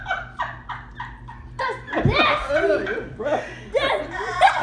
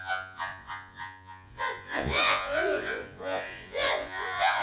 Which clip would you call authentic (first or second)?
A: first